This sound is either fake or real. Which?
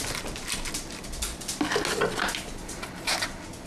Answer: real